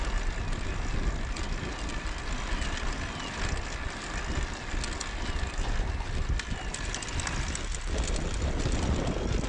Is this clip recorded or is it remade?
recorded